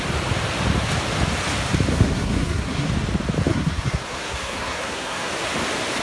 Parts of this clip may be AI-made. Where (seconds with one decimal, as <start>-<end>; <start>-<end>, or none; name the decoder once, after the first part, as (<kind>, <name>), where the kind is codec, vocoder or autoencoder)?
1.9-2.9 (codec, SNAC); 3.5-5.3